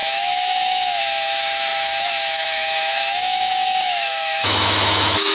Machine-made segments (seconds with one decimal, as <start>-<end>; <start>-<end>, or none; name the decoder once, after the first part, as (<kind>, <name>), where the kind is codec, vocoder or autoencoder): 0.0-5.3 (autoencoder, DAC-VAE)